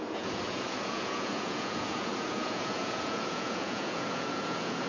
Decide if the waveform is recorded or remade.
remade